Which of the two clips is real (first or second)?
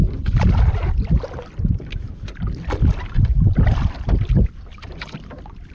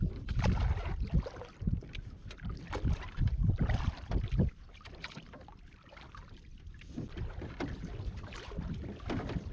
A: first